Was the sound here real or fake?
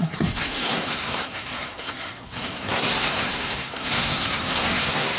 fake